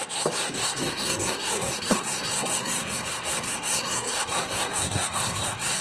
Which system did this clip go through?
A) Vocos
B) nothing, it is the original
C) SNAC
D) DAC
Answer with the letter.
C